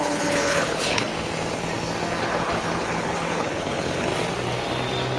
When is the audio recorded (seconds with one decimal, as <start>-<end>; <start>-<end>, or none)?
1.1-2.2; 4.1-5.2